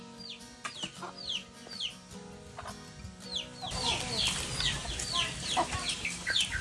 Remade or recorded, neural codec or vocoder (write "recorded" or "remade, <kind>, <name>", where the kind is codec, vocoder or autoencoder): recorded